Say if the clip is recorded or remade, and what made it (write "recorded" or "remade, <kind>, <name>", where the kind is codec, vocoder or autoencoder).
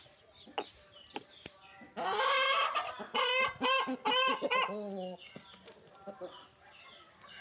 recorded